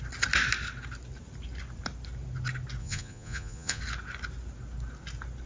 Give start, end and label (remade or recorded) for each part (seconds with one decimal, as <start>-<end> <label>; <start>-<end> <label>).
0.0-2.8 recorded; 2.8-3.8 remade; 3.8-5.5 recorded